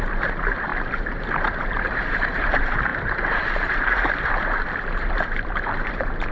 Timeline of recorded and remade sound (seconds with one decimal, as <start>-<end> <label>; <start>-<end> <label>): 0.0-6.3 remade